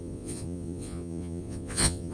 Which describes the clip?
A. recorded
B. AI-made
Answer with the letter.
B